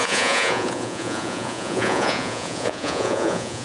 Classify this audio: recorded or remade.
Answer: remade